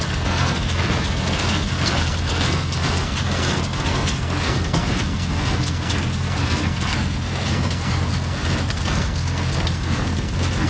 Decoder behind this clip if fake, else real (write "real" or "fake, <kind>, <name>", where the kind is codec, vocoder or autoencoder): fake, codec, SNAC